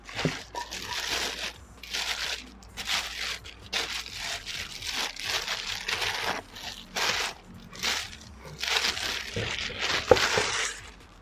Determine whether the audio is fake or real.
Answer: real